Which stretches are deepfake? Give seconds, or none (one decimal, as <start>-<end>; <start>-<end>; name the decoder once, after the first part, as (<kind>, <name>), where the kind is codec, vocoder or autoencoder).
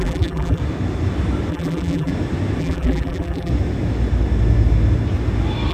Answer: 0.0-0.6 (vocoder, BigVGAN v2); 1.5-2.1; 2.6-3.5